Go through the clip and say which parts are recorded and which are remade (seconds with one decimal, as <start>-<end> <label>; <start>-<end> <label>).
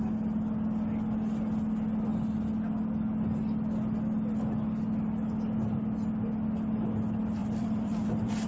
0.0-7.4 recorded; 7.4-8.5 remade